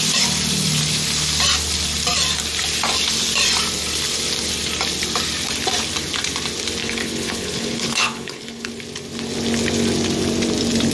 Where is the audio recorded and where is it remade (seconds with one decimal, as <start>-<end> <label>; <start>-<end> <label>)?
0.0-6.8 recorded; 6.8-8.7 remade; 8.7-10.9 recorded